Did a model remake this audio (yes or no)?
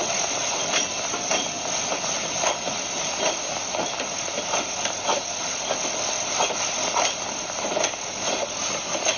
no